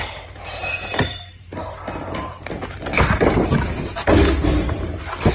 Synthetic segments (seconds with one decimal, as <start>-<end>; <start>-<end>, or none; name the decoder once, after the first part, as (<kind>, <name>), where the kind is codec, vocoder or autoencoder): 0.0-1.5 (vocoder, BigVGAN v2); 4.7-5.3